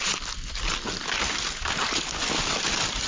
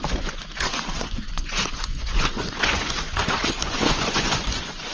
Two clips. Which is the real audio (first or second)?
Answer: first